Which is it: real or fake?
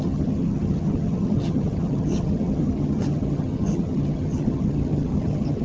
fake